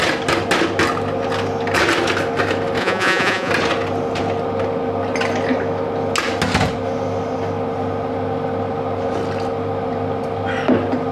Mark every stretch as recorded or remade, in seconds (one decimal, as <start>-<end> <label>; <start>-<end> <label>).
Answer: 0.0-2.8 recorded; 2.8-3.5 remade; 3.5-11.1 recorded